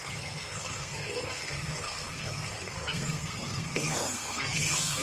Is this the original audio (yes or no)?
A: no